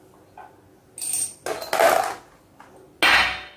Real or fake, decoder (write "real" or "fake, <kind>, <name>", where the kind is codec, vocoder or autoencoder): real